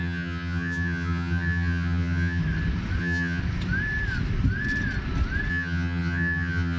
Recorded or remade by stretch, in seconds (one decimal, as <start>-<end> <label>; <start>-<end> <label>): 0.0-2.4 remade; 2.4-3.0 recorded; 3.0-3.4 remade; 3.4-5.5 recorded; 5.5-6.8 remade